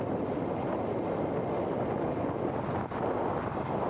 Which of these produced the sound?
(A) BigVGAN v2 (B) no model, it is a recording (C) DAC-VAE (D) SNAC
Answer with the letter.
B